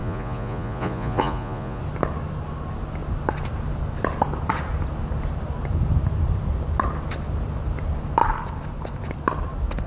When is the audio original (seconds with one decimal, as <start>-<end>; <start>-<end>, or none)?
1.8-9.9

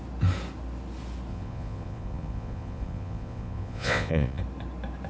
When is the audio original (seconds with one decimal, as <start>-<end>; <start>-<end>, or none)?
0.0-1.3; 4.4-5.1

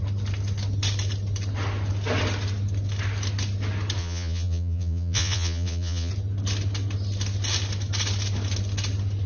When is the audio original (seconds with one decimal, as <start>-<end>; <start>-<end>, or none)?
0.0-4.0; 6.1-9.3

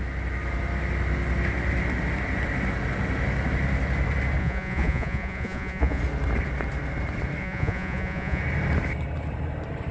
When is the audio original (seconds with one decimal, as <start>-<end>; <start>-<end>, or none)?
0.0-4.4; 6.0-7.4; 8.4-9.9

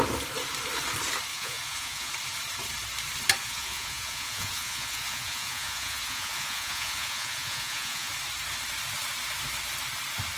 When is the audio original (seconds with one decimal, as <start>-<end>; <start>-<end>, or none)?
0.0-1.3; 2.1-3.4; 8.1-10.4

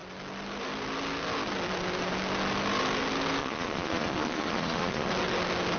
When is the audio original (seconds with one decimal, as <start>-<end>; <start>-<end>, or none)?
0.0-3.4; 5.1-5.8

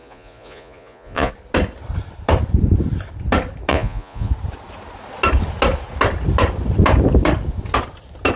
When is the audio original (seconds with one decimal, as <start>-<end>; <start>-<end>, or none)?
1.3-3.7; 4.3-8.4